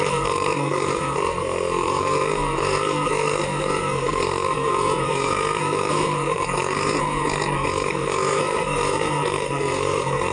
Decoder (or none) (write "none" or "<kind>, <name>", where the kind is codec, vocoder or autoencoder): codec, SNAC